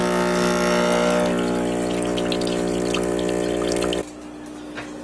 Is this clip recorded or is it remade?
recorded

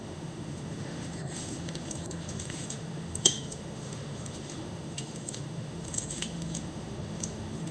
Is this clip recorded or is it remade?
remade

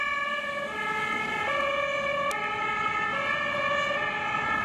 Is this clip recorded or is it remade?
recorded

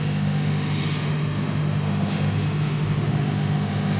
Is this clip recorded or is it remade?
remade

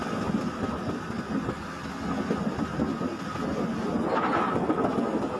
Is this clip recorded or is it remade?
recorded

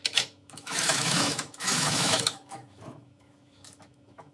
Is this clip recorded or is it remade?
remade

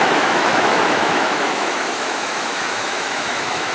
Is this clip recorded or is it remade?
remade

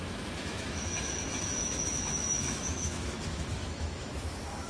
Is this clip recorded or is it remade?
remade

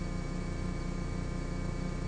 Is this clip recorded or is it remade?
remade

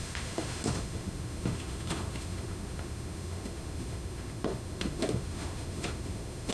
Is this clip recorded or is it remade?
remade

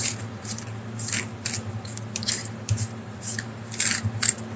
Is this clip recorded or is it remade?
recorded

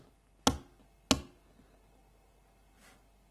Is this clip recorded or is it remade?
recorded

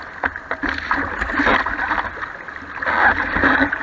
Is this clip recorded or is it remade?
recorded